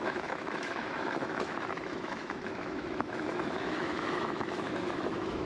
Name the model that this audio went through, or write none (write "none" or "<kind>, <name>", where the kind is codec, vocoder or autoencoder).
autoencoder, DAC-VAE